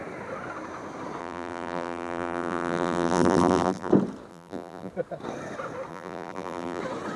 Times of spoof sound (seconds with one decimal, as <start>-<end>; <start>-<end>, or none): 1.2-3.9; 4.3-4.9; 5.9-6.8